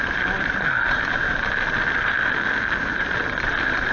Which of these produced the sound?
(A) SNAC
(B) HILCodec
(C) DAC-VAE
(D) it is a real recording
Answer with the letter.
D